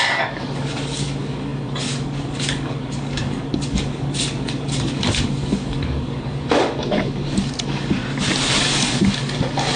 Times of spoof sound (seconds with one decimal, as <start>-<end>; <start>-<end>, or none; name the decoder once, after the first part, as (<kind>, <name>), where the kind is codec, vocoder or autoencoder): 0.0-8.0 (codec, DAC); 8.6-9.8